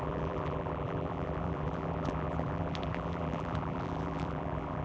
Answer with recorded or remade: remade